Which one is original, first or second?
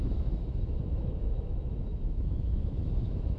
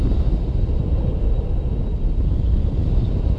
second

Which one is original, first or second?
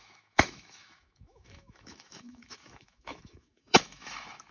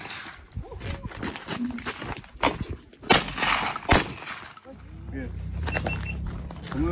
second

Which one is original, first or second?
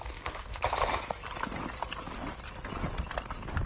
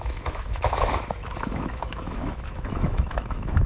first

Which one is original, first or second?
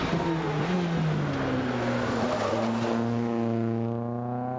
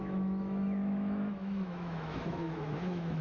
first